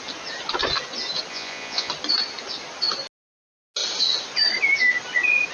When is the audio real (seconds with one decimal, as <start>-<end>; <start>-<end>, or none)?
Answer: 0.0-1.3; 1.9-5.5